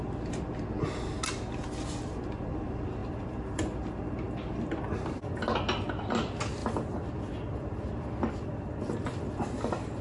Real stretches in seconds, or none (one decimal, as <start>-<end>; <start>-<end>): 0.0-3.0; 4.5-6.6